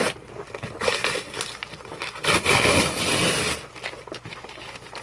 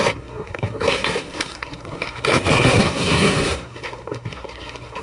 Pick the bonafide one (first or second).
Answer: first